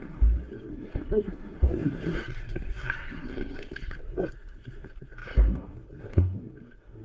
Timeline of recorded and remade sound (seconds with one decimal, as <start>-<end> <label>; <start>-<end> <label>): 0.0-7.0 remade